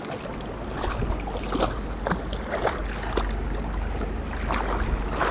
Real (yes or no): yes